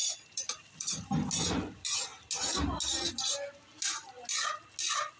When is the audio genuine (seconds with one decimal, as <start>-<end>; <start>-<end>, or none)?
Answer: 0.9-5.2